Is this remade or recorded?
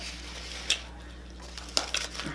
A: recorded